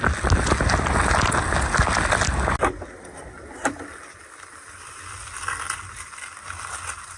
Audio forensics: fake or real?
real